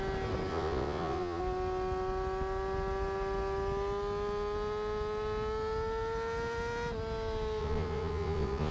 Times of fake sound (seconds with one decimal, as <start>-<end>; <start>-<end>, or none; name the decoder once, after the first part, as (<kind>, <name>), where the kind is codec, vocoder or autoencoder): 0.5-1.4 (vocoder, Vocos); 7.6-8.7